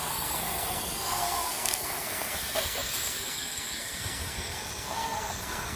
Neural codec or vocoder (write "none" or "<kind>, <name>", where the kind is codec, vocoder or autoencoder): codec, SNAC